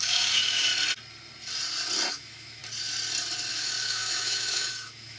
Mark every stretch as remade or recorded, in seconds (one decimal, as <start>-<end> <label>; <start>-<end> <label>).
0.0-0.7 remade; 0.7-2.1 recorded; 2.1-2.6 remade; 2.6-3.5 recorded; 3.5-5.2 remade